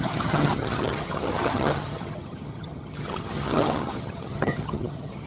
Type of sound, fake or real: fake